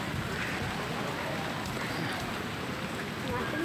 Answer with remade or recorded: recorded